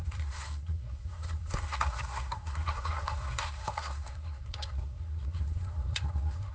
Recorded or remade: remade